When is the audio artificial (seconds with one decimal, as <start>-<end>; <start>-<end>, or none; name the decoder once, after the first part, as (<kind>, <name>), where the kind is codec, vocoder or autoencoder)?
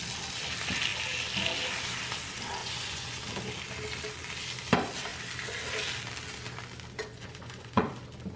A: 2.6-3.2 (vocoder, Vocos); 7.0-7.9